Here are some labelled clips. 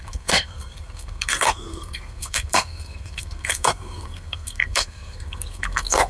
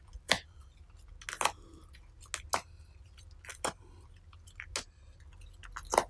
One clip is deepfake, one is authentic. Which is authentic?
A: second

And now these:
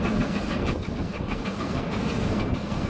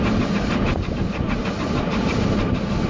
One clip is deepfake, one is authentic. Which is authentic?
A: second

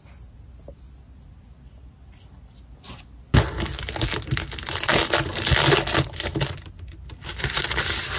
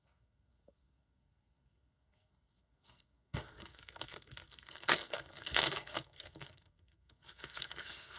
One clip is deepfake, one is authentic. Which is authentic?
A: first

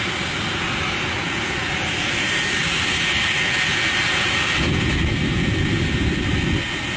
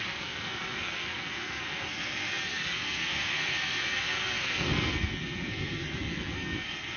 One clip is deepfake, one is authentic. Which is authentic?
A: first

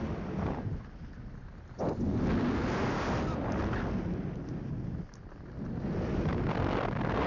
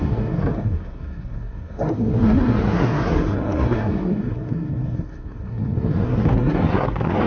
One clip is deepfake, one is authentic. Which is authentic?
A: first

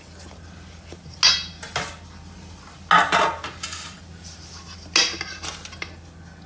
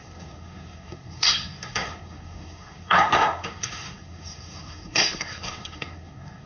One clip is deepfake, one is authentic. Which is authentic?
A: first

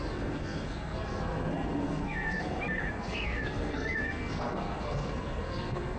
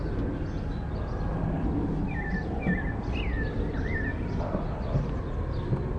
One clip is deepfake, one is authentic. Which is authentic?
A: second